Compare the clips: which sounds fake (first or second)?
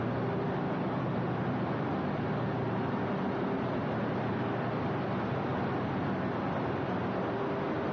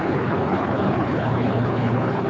second